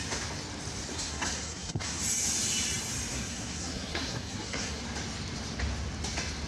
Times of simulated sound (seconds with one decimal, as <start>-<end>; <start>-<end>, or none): 0.9-2.0; 3.1-4.8